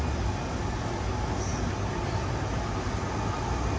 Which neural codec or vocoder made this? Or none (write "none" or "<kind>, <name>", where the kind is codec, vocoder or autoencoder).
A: none